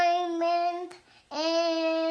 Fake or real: fake